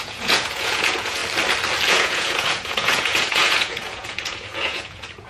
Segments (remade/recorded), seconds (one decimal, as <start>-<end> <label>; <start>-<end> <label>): 0.0-1.2 remade; 1.2-1.9 recorded; 1.9-5.3 remade